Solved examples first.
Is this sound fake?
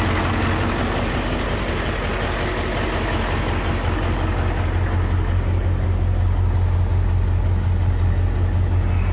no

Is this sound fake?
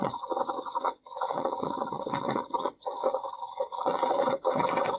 yes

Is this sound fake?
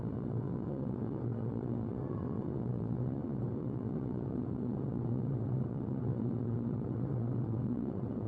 yes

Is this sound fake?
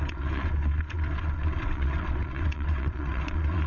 yes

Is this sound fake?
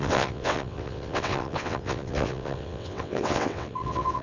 yes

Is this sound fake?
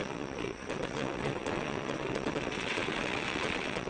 yes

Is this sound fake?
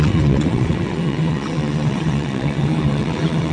yes